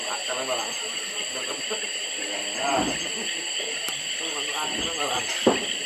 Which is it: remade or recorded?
recorded